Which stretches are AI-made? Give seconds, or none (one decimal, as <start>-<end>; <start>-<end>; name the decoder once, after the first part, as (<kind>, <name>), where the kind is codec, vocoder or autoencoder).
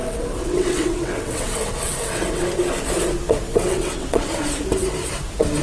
0.0-2.4 (vocoder, WaveNeXt); 3.5-4.3